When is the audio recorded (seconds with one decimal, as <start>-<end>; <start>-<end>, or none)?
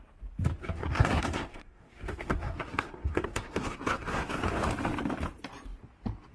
0.0-0.6; 4.4-6.3